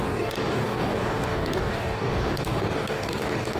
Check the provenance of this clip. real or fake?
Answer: fake